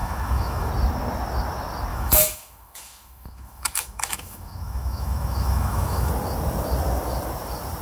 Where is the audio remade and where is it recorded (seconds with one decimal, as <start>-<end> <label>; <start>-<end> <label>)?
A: 0.0-0.7 remade; 0.7-1.9 recorded; 1.9-6.1 remade; 6.1-7.8 recorded